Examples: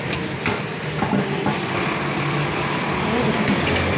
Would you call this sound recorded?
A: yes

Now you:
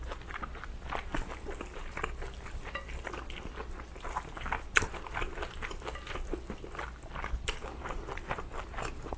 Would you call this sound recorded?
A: yes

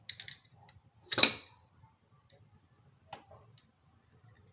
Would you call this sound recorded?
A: yes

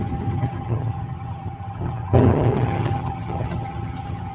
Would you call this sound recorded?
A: no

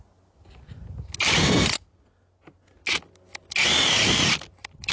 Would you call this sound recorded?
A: yes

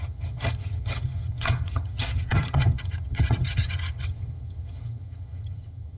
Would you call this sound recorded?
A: no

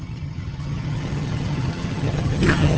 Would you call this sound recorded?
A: no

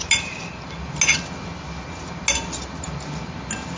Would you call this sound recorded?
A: yes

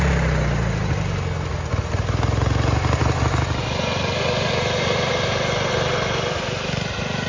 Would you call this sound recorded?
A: yes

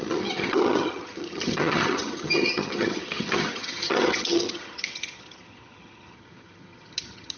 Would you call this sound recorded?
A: no